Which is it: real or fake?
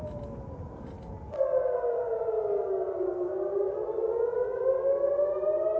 real